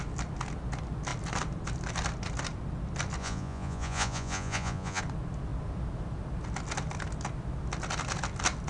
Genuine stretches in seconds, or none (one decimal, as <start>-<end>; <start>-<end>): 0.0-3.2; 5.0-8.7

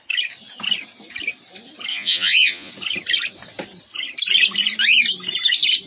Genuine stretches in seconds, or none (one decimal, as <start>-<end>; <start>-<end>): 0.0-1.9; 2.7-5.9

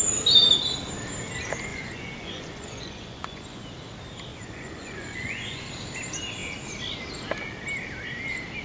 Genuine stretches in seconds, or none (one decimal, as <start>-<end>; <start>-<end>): 0.0-1.7; 3.6-4.3; 5.7-8.6